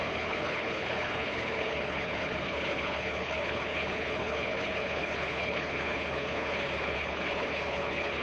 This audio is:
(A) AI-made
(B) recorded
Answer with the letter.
A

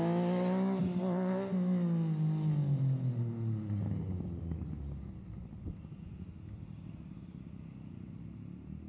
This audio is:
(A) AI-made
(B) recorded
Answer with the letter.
B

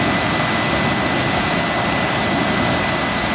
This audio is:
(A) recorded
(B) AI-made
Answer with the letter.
A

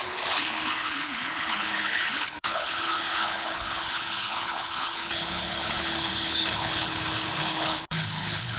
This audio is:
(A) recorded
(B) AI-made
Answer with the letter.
B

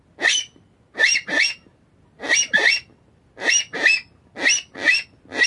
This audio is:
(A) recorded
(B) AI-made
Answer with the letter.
A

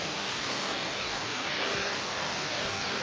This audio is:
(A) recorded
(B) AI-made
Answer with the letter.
B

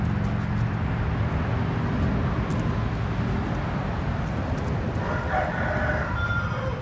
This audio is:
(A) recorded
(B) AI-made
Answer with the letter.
A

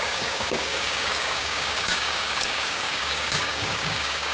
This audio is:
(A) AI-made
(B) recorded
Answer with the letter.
A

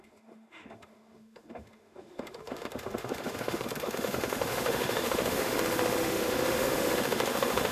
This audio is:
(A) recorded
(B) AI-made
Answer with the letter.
B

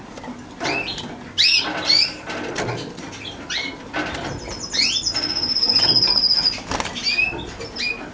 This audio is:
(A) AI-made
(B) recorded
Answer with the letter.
B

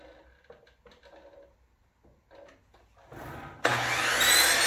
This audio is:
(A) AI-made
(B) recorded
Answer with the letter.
B